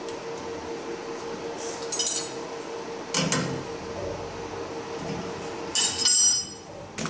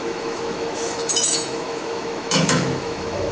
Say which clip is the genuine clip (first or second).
first